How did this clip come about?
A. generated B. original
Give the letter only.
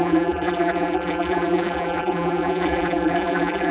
A